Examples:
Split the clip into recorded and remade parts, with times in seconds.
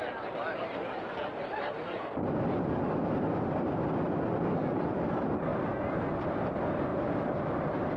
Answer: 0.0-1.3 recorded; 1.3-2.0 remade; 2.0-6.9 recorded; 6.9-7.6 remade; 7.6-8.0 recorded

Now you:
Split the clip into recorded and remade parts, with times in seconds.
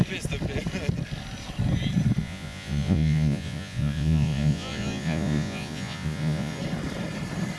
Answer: 0.0-2.2 recorded; 2.2-6.6 remade; 6.6-7.6 recorded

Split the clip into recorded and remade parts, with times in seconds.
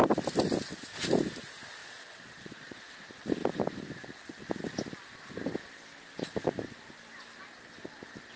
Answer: 0.0-1.8 recorded; 1.8-2.8 remade; 2.8-8.4 recorded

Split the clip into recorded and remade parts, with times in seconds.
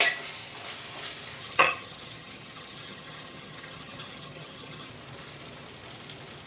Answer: 0.0-1.4 recorded; 1.4-4.9 remade; 4.9-6.5 recorded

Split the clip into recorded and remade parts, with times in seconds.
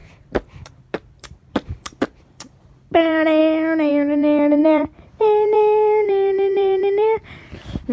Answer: 0.0-3.4 remade; 3.4-3.9 recorded; 3.9-7.9 remade